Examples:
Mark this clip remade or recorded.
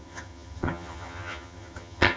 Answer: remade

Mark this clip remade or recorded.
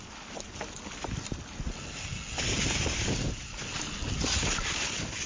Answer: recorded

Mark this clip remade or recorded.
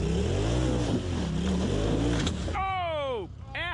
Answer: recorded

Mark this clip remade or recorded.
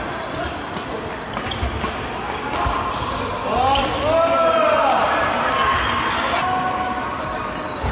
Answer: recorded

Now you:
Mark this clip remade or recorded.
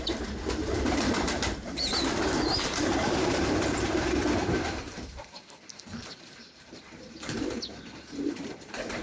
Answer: remade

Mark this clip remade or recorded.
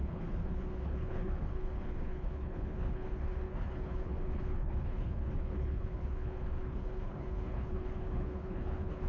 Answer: remade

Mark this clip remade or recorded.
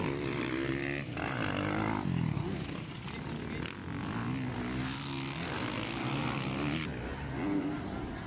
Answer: recorded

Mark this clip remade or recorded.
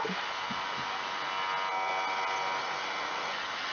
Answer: recorded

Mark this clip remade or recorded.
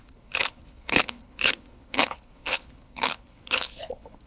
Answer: remade